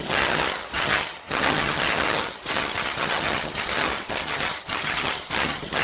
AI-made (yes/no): yes